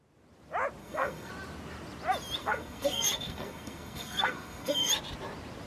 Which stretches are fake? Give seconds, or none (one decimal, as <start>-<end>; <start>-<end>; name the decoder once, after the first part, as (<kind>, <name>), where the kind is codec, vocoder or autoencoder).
0.8-1.3 (codec, SNAC); 2.4-4.9